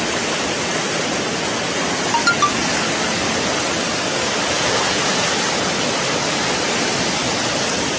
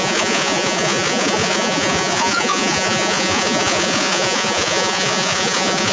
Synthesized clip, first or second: second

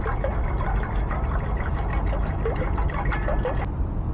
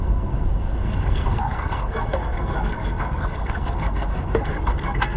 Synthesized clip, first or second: second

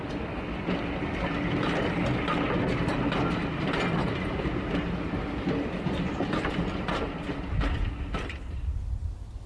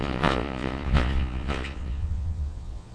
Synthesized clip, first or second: second